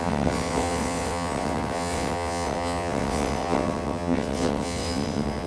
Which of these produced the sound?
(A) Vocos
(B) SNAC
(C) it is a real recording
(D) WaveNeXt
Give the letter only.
D